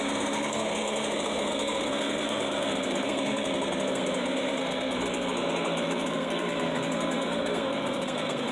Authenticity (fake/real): fake